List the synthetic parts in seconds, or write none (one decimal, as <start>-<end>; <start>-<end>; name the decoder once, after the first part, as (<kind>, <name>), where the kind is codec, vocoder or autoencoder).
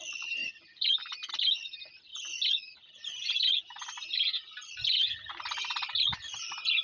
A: none